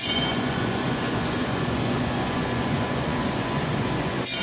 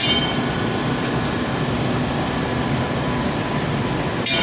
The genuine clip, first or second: second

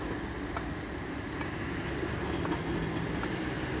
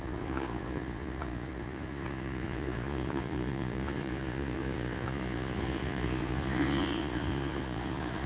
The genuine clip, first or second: first